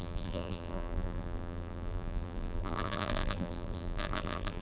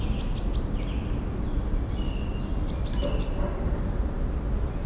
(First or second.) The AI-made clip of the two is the first